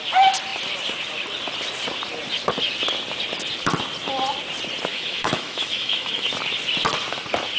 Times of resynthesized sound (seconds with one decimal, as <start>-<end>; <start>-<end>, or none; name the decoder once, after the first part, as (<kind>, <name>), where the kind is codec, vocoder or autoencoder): 4.9-6.3 (autoencoder, DAC-VAE)